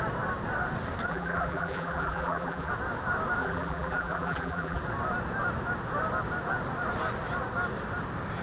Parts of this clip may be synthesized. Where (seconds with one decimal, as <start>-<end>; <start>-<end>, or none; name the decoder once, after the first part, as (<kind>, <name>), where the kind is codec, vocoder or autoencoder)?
1.1-2.7 (vocoder, BigVGAN v2); 3.4-4.8